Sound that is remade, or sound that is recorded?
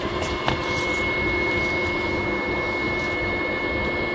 recorded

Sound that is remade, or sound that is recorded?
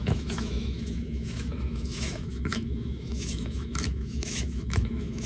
remade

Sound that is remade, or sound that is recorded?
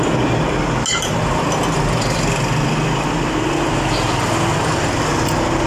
recorded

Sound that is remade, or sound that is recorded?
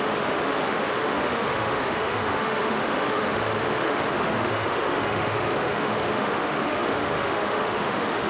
remade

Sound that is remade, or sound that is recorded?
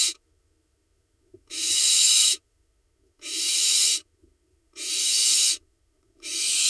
remade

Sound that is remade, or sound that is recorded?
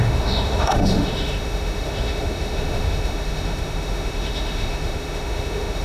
remade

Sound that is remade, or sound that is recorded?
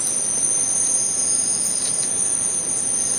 recorded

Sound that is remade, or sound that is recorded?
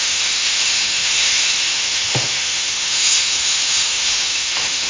remade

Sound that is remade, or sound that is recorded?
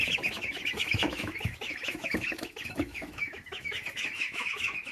remade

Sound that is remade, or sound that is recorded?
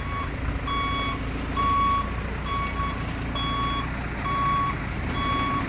recorded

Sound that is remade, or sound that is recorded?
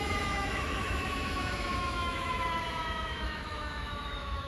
remade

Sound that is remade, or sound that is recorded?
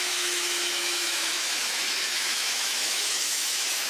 remade